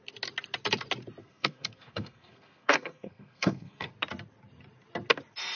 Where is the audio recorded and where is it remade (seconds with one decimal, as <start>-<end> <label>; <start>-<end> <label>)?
0.0-1.2 recorded; 1.2-3.9 remade; 3.9-5.6 recorded